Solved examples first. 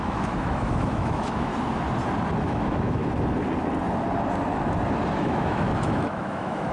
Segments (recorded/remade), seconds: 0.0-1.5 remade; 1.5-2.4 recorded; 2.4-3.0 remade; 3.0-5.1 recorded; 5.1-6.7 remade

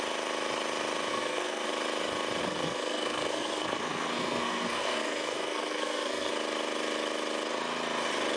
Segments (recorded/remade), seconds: 0.0-1.1 recorded; 1.1-1.7 remade; 1.7-2.4 recorded; 2.4-6.3 remade; 6.3-8.4 recorded

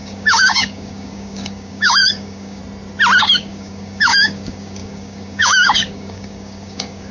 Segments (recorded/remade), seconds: 0.0-2.6 remade; 2.6-3.2 recorded; 3.2-7.1 remade

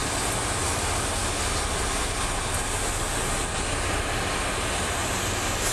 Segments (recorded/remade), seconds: 0.0-5.7 recorded